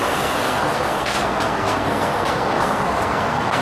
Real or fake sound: fake